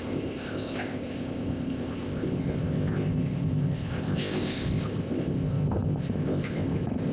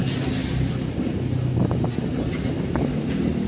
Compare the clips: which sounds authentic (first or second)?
second